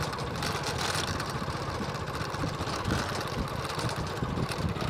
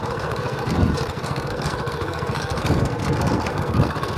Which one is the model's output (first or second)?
second